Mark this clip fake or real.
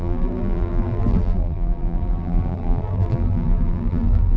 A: fake